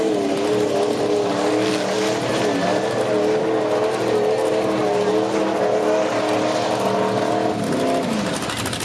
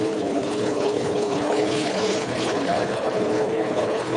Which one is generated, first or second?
second